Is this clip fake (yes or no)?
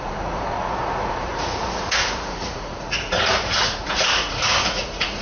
yes